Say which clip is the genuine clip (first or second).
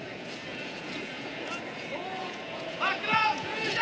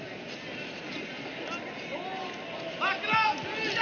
second